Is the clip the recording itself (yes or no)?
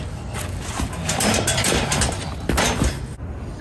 yes